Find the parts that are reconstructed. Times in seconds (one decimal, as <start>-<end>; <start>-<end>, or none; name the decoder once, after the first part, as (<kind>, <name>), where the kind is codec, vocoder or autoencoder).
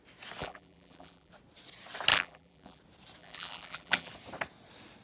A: 0.4-1.3 (vocoder, BigVGAN v2); 2.1-2.8; 3.2-4.1